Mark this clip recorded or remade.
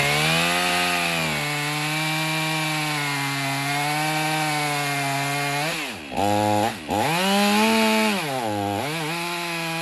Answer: recorded